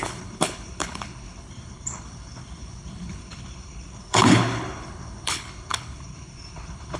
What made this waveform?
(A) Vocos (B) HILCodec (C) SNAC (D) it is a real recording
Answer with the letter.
B